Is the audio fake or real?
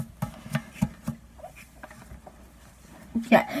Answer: real